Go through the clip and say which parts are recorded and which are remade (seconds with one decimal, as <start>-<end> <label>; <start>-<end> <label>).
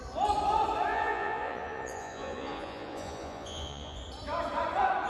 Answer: 0.0-0.9 recorded; 0.9-4.0 remade; 4.0-5.1 recorded